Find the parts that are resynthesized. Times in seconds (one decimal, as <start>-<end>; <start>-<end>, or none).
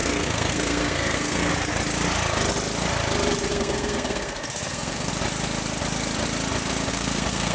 0.0-1.5; 3.5-5.1; 6.9-7.5